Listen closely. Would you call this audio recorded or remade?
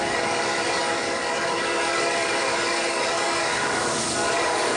remade